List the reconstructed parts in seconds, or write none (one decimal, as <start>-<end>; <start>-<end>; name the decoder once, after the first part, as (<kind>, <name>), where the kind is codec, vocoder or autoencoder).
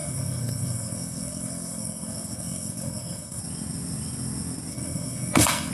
0.0-3.4 (codec, SNAC); 4.7-5.7